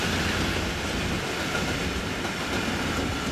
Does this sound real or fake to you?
real